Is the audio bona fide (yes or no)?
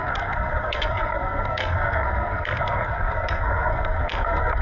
no